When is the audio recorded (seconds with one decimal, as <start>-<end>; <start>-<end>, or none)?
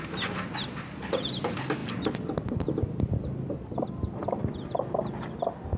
0.0-5.8